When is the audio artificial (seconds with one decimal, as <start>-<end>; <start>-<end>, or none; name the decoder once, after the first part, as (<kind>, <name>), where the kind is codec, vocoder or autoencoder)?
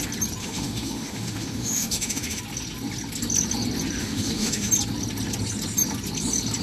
0.4-2.4 (autoencoder, DAC-VAE); 4.0-4.7